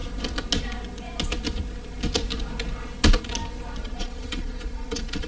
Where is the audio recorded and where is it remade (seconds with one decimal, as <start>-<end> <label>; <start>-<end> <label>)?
0.0-3.8 recorded; 3.8-5.3 remade